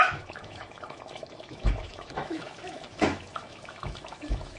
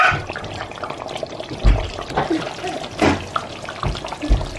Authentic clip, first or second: second